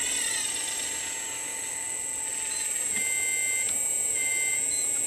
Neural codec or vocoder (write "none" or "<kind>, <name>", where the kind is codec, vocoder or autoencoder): none